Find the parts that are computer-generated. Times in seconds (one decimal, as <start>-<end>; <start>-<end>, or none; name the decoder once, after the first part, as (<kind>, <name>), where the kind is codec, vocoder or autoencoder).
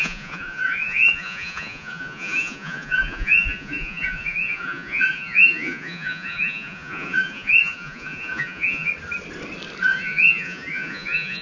0.0-8.9 (vocoder, Vocos); 9.8-11.4